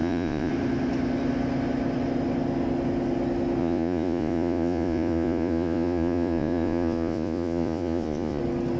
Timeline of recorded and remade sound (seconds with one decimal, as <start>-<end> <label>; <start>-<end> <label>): 0.0-0.5 remade; 0.5-3.6 recorded; 3.6-8.4 remade; 8.4-8.8 recorded